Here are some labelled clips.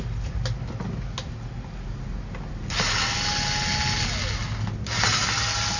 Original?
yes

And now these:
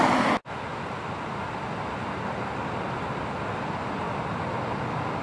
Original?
yes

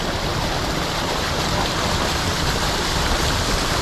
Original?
yes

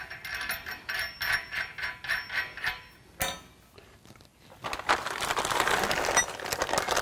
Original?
yes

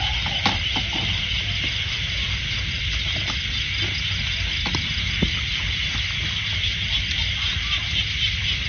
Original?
yes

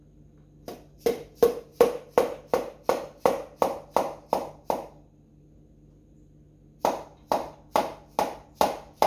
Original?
yes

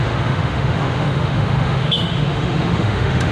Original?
no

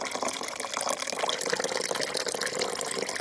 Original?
yes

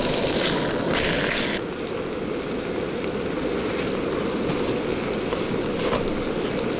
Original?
yes